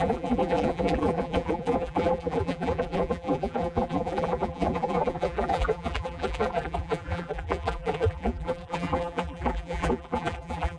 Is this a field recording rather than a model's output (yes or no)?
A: no